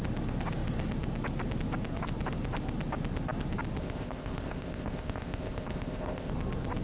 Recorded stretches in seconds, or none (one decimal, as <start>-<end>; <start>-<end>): 0.0-3.8; 6.3-6.8